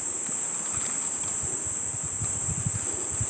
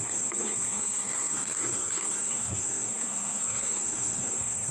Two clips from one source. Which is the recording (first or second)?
first